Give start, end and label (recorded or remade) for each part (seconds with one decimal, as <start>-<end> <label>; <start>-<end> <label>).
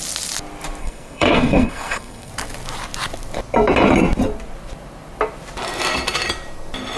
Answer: 0.0-0.8 recorded; 0.8-2.3 remade; 2.3-7.0 recorded